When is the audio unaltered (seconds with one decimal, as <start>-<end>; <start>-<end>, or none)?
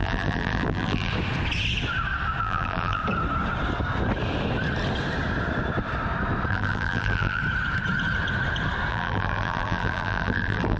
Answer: 1.1-2.4; 3.0-6.5; 7.4-8.9